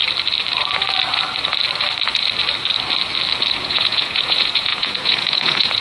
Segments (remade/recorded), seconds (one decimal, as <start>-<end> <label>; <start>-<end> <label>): 0.0-3.5 recorded; 3.5-5.8 remade